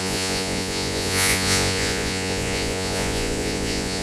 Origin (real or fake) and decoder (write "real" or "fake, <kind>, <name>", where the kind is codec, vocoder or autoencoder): fake, vocoder, Vocos